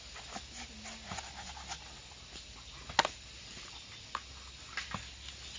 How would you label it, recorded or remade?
recorded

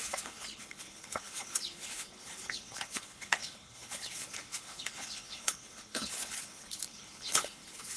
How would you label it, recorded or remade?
remade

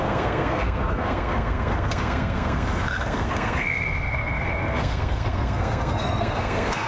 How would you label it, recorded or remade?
remade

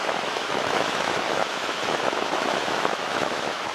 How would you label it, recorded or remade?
remade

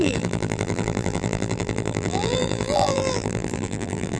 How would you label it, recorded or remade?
remade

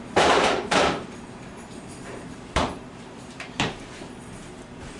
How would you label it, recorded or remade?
remade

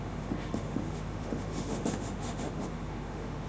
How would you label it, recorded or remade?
remade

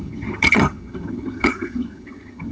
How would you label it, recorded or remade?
remade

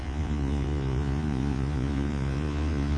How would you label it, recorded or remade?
remade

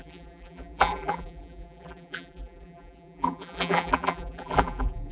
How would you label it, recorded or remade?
remade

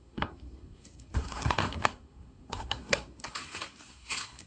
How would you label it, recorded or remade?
remade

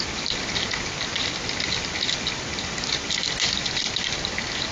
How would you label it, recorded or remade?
recorded